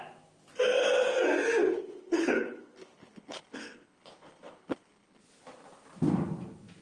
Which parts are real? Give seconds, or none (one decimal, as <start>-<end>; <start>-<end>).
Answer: 0.0-1.6; 5.2-6.8